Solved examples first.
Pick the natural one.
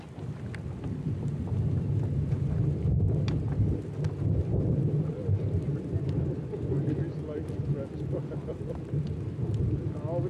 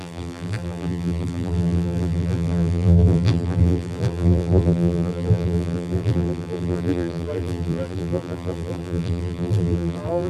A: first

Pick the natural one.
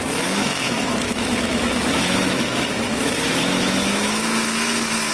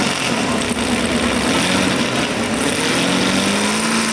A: second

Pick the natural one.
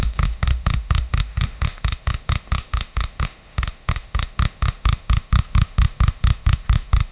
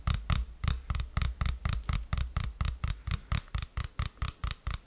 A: second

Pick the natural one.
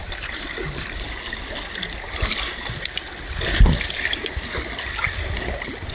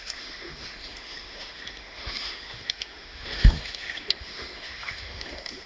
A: first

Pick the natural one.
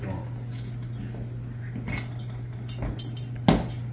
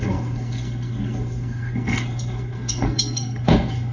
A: first